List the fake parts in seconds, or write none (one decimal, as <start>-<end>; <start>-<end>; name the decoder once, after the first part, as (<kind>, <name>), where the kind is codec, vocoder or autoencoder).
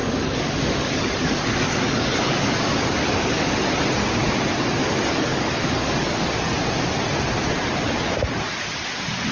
0.0-3.5 (codec, DAC); 4.8-6.3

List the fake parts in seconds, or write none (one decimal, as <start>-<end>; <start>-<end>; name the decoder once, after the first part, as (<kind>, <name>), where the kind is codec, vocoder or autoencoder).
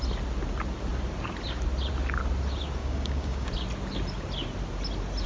2.8-3.5 (codec, DAC)